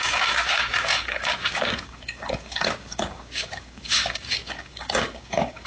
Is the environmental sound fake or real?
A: fake